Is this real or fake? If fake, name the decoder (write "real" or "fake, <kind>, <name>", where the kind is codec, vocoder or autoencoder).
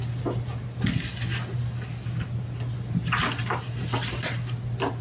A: real